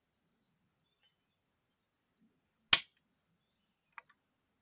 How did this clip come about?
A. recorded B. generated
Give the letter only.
A